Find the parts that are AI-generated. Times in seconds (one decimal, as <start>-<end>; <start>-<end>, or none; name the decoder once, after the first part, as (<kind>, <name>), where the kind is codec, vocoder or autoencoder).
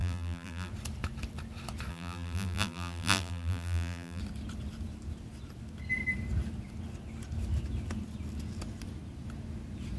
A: 0.0-0.7 (vocoder, BigVGAN v2); 1.9-4.2